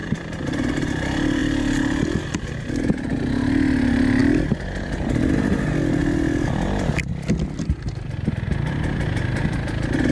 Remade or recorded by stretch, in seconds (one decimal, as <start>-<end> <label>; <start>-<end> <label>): 0.0-4.2 recorded; 4.2-4.9 remade; 4.9-6.0 recorded; 6.0-6.5 remade; 6.5-10.1 recorded